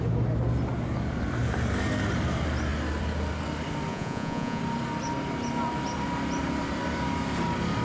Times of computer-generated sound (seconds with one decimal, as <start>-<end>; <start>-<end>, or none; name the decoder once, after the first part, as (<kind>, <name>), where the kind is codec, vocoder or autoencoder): 3.9-4.6 (vocoder, Vocos)